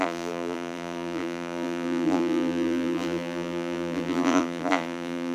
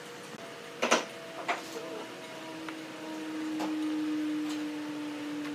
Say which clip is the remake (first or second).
first